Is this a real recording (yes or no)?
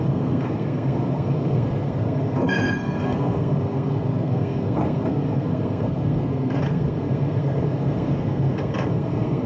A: no